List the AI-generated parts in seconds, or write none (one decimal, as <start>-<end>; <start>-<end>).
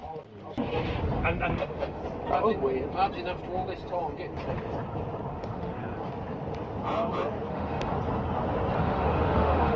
1.5-2.0; 5.3-5.8; 7.5-7.9; 8.8-9.8